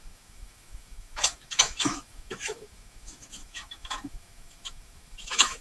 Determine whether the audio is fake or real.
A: fake